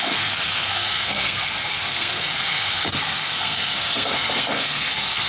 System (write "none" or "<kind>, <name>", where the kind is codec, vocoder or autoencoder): codec, SNAC